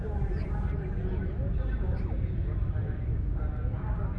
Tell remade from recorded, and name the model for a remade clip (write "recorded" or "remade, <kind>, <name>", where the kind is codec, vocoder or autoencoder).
recorded